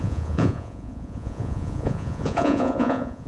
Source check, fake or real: fake